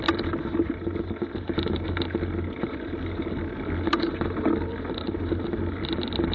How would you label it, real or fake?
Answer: real